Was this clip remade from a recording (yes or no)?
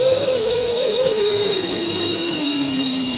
yes